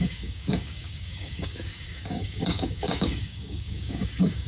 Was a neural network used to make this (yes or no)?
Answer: yes